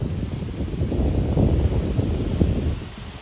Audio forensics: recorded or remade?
recorded